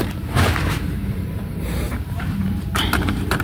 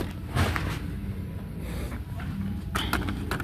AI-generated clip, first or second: first